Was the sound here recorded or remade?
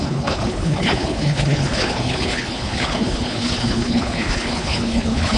remade